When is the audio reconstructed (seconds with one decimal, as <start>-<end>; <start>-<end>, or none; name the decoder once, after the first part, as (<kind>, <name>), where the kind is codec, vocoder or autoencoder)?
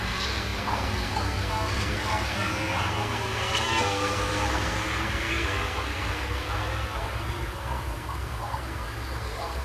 0.0-9.6 (codec, SNAC)